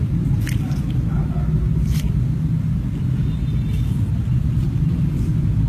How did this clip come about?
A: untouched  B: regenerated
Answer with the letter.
A